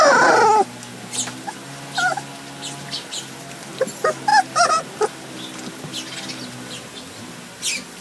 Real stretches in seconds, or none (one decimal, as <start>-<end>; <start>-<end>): 0.0-8.0